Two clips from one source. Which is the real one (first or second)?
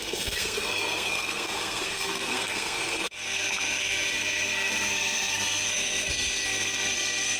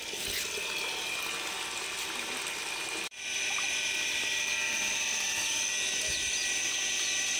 second